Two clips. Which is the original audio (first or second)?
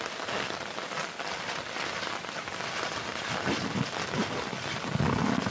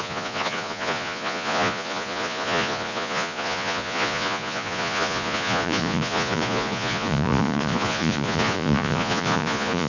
first